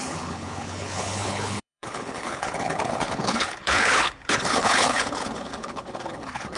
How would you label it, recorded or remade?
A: remade